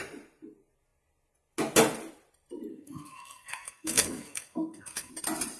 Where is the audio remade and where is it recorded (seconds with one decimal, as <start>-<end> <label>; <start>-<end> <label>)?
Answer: 0.0-2.7 recorded; 2.7-5.1 remade; 5.1-5.6 recorded